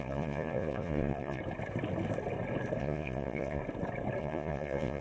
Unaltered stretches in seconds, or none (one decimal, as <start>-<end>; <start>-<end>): 1.4-2.8; 3.6-4.2